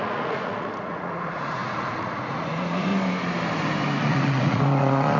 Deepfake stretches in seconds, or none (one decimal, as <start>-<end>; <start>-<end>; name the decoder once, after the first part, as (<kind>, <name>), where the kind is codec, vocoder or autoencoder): 0.0-2.9 (vocoder, Vocos); 4.0-5.2